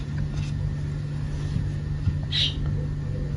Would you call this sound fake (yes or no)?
no